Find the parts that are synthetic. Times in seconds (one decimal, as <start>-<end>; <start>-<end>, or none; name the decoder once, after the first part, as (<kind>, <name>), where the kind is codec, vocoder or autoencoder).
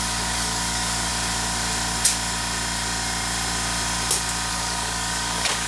0.0-1.1 (codec, DAC); 4.5-5.7